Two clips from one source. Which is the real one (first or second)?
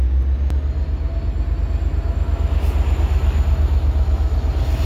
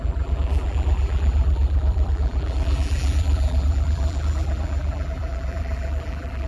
first